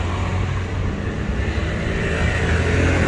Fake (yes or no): no